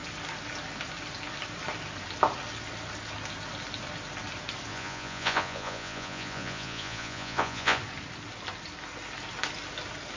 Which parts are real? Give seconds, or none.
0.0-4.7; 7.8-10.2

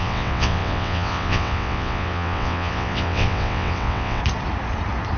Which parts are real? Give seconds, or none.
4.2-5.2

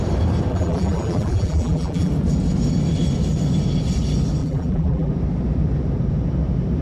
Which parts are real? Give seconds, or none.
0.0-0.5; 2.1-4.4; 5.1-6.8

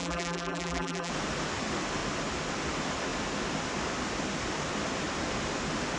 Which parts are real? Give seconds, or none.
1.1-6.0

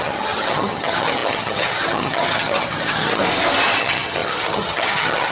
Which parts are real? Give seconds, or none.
3.2-3.8